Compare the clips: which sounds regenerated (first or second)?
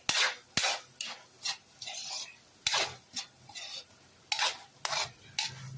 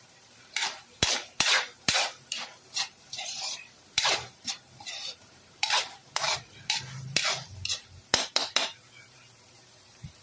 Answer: second